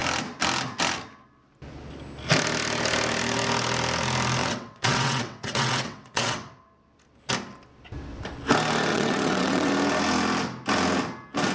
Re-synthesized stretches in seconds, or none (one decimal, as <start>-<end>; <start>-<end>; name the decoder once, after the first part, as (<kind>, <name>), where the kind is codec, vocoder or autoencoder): 4.4-6.5 (vocoder, WaveNeXt); 8.9-9.7